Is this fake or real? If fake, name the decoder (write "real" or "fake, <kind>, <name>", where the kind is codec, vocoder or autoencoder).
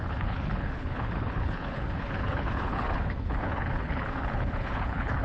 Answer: fake, codec, HILCodec